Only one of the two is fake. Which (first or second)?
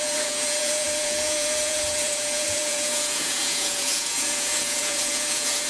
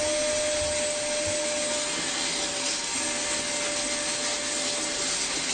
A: first